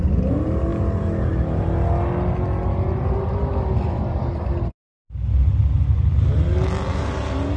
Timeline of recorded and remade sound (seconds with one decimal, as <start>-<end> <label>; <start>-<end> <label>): 0.0-7.6 recorded